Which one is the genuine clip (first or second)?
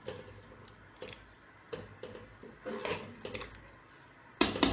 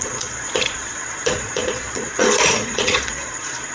first